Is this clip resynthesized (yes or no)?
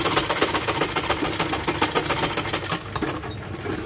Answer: no